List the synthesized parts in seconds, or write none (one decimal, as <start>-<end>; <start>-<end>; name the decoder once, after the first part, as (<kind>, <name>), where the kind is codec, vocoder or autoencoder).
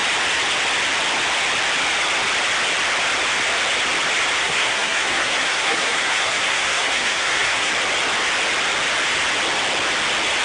4.4-7.7 (codec, SNAC)